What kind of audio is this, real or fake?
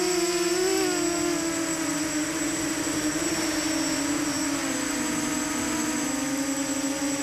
real